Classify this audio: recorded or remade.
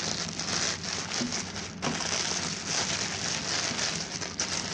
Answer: recorded